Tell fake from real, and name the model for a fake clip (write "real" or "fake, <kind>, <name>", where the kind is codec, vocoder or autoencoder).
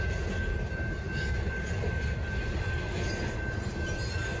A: real